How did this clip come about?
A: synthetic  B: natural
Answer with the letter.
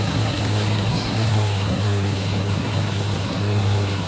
A